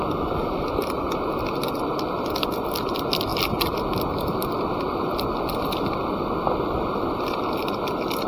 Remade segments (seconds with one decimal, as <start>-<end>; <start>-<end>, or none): none